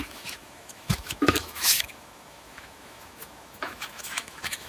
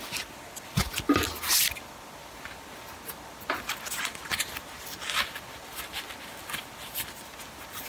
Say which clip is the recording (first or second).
second